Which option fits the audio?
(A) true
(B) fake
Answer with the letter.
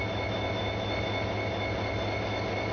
A